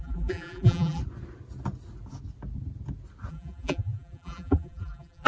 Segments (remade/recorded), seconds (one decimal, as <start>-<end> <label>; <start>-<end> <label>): 0.0-1.0 remade; 1.0-3.3 recorded; 3.3-5.3 remade